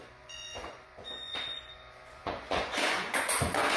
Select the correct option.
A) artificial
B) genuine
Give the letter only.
A